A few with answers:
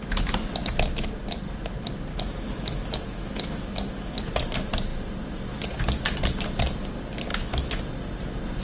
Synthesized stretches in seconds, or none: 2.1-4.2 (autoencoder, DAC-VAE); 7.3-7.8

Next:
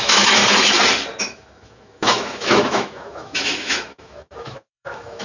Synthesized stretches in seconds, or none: 0.0-0.4 (autoencoder, DAC-VAE); 1.2-5.2

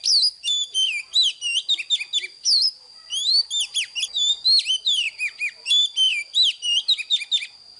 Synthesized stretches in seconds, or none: none

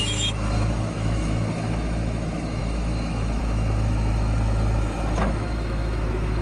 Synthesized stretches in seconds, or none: 0.0-6.4 (autoencoder, DAC-VAE)